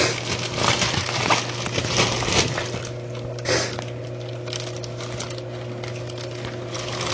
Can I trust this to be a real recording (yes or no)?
yes